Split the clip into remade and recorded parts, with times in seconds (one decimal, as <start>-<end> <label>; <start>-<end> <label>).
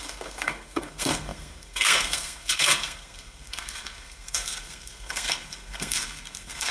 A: 0.0-6.7 remade